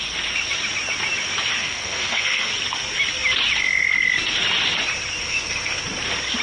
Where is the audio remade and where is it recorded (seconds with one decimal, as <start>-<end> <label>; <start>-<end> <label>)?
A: 0.0-1.6 recorded; 1.6-2.5 remade; 2.5-5.2 recorded; 5.2-5.8 remade; 5.8-6.4 recorded